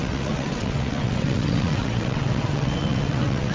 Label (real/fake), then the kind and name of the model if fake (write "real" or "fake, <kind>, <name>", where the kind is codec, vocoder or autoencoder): fake, vocoder, WaveNeXt